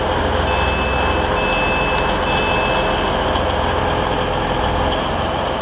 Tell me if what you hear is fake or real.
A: real